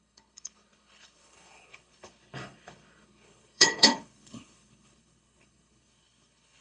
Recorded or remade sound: remade